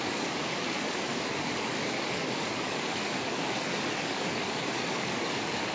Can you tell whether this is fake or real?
fake